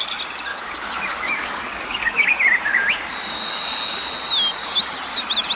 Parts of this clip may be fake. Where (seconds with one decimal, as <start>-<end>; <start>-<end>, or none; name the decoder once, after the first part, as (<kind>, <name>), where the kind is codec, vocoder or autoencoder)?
0.5-2.3 (codec, DAC); 2.7-4.1